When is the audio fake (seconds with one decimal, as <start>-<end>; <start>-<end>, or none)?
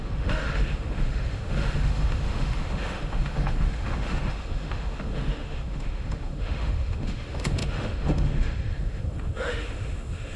0.0-10.4